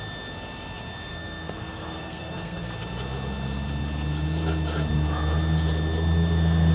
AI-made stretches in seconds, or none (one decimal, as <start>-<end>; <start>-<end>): 1.1-2.7